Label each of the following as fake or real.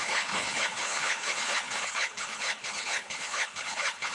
fake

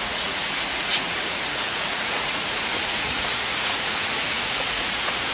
fake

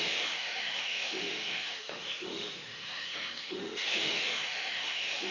fake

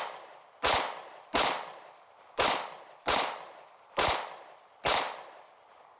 real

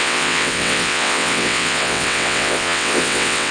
fake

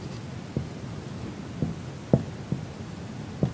real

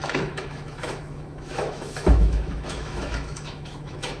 fake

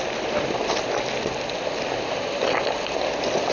real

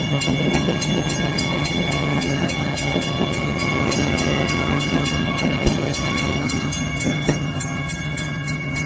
fake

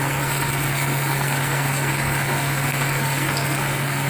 fake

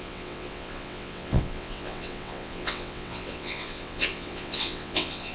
fake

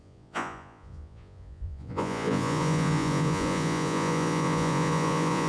fake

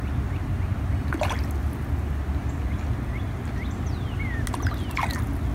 real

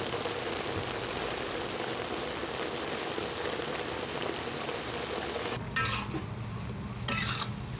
real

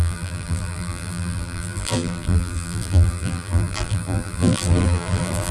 fake